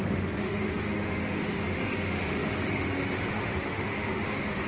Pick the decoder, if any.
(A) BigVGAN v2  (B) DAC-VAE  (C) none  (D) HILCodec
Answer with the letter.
B